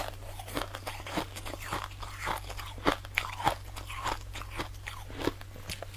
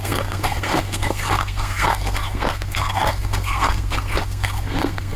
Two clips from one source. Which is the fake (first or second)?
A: second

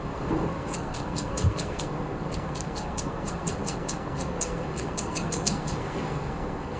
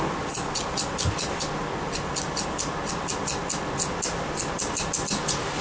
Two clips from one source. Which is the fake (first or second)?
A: first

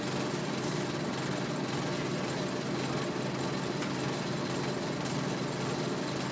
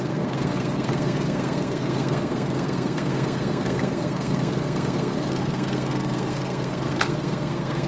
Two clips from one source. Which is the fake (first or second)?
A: second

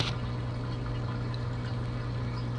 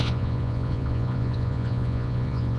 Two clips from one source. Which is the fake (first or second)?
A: second